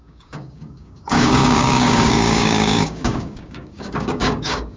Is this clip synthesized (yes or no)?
yes